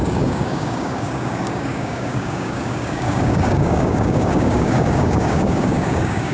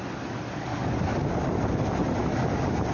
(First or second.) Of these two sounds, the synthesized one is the first